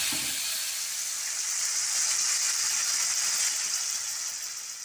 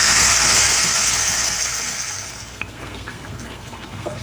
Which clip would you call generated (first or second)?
second